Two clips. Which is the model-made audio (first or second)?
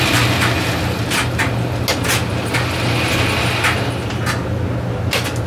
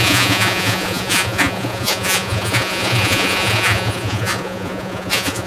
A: second